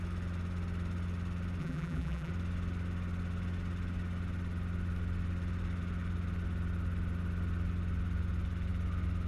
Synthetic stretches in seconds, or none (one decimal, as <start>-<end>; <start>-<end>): 1.6-2.3